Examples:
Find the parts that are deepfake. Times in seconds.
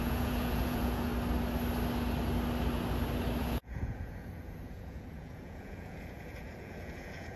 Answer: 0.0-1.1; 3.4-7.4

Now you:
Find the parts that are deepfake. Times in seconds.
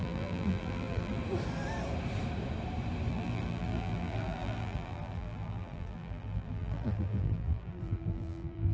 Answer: 0.0-1.2; 3.1-8.7